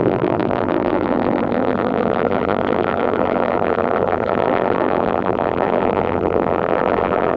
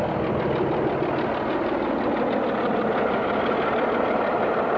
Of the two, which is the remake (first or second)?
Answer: first